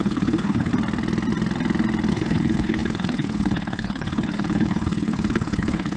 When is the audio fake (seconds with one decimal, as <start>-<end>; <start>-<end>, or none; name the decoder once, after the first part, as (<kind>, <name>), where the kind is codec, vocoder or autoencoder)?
0.0-0.7 (codec, HILCodec); 2.1-6.0